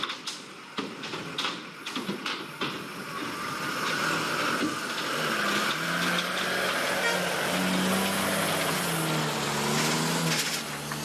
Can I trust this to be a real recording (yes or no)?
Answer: yes